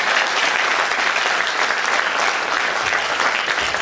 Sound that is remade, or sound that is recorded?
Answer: recorded